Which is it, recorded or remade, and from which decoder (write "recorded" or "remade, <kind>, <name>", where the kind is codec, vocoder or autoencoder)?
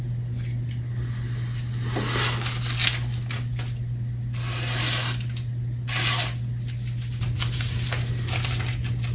recorded